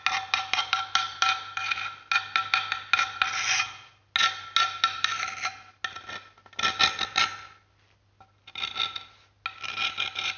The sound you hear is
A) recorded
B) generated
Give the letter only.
A